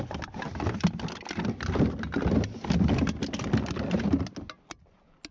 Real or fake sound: real